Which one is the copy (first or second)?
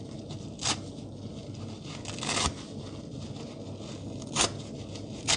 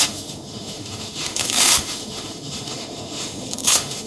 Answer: second